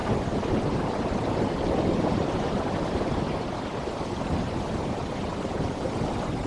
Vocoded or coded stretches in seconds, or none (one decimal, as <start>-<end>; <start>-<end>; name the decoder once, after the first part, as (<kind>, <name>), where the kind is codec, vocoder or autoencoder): none